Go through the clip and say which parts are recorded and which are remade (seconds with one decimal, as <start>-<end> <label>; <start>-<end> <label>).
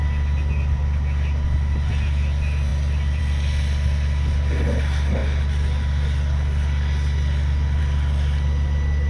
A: 0.0-9.1 recorded